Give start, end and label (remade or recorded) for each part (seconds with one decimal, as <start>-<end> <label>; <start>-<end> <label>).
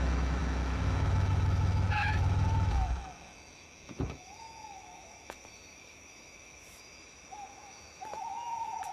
0.0-8.9 remade